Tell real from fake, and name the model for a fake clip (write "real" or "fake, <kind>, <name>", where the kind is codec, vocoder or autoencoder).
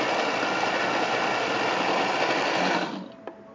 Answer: real